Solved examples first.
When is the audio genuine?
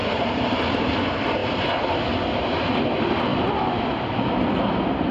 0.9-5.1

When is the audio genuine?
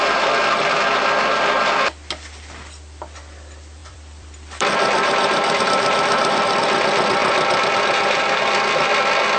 0.0-3.8; 5.6-9.4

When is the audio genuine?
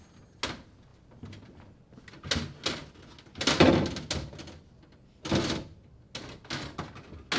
0.0-7.4